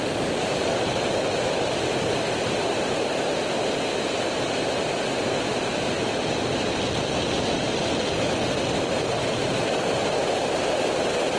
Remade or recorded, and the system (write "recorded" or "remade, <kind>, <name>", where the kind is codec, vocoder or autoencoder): recorded